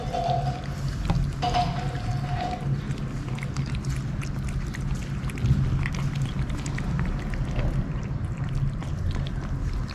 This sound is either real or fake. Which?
real